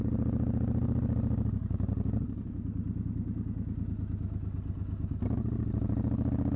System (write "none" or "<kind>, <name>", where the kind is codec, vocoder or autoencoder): none